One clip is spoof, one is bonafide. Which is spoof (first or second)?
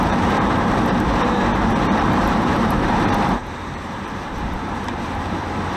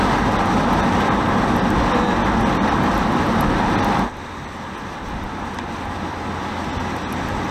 first